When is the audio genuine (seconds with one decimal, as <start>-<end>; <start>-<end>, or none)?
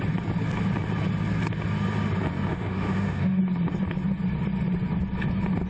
0.0-2.5; 3.4-5.7